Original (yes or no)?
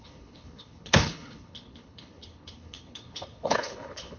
no